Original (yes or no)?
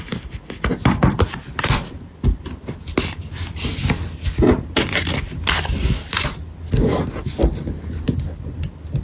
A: yes